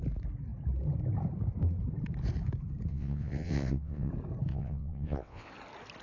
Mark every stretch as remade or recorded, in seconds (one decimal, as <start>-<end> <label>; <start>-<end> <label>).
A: 0.0-2.9 recorded; 2.9-4.1 remade; 4.1-4.5 recorded; 4.5-5.5 remade; 5.5-6.0 recorded